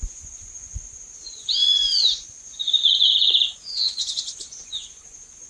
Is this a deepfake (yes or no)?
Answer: yes